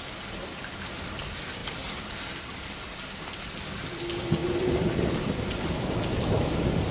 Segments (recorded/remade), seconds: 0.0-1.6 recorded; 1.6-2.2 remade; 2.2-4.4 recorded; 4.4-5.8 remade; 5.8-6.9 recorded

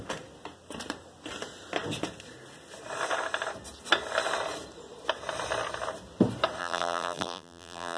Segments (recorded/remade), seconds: 0.0-6.6 recorded; 6.6-8.0 remade

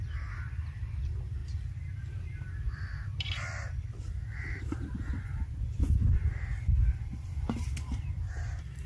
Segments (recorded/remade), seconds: 0.0-8.9 remade

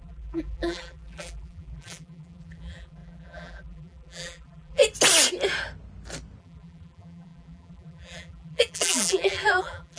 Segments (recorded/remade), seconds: 0.0-4.8 remade; 4.8-6.4 recorded; 6.4-10.0 remade

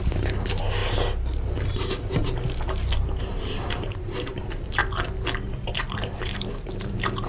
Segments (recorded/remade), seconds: 0.0-0.8 remade; 0.8-3.2 recorded; 3.2-4.8 remade; 4.8-5.7 recorded; 5.7-7.3 remade

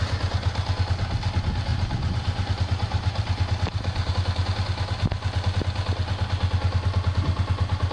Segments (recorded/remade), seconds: 0.0-1.7 recorded; 1.7-4.1 remade; 4.1-7.9 recorded

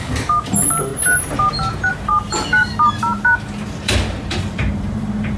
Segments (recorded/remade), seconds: 0.0-0.9 remade; 0.9-1.9 recorded; 1.9-5.4 remade

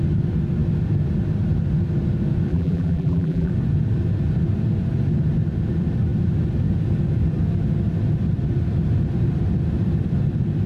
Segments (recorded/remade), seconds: 0.0-2.5 recorded; 2.5-3.5 remade; 3.5-10.7 recorded